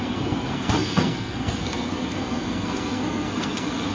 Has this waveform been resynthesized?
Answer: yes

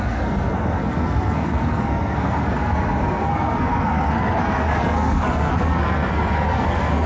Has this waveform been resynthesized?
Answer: yes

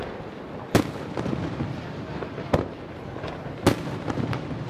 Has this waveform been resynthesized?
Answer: no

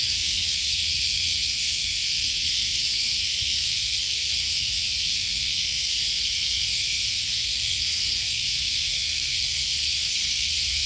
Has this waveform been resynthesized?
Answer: yes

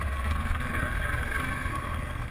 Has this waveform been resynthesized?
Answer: yes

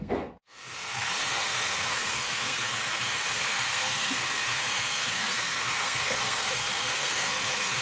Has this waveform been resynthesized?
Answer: yes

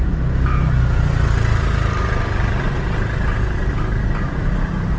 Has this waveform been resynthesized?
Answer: no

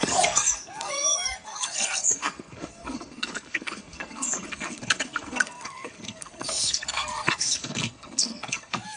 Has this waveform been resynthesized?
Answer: yes